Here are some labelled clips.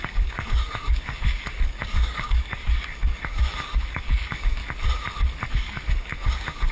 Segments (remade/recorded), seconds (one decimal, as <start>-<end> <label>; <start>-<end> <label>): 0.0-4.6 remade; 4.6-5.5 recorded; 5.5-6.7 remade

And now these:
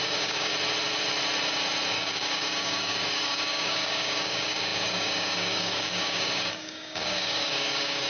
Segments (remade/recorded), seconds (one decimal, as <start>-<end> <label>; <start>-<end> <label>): 0.0-0.5 remade; 0.5-1.9 recorded; 1.9-8.1 remade

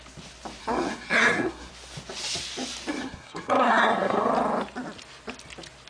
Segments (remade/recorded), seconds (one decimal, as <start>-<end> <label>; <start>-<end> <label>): 0.0-0.6 recorded; 0.6-1.7 remade; 1.7-2.9 recorded; 2.9-4.3 remade; 4.3-5.9 recorded